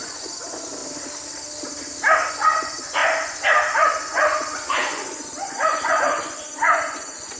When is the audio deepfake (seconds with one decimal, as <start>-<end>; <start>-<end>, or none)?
0.0-0.8; 2.3-3.0; 3.9-7.4